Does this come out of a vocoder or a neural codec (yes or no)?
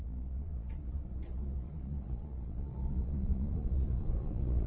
yes